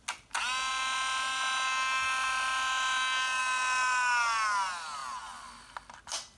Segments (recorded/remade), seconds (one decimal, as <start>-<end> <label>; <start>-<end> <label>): 0.0-6.4 recorded